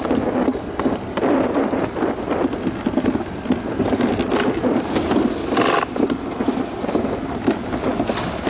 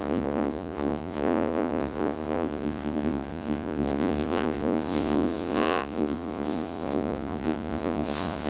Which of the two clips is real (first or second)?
first